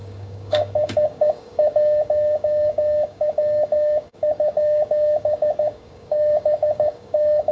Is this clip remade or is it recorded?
remade